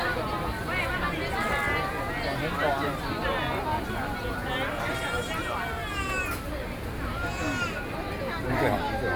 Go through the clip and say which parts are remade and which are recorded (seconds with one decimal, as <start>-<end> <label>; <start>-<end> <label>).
0.0-9.2 recorded